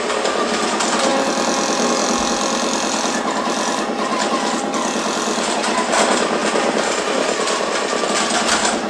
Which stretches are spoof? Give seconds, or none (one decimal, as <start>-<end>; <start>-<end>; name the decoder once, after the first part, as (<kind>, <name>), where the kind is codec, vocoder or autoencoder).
none